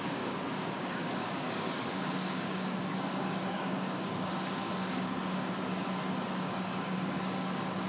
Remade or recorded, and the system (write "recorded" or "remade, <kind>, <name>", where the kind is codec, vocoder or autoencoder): remade, codec, DAC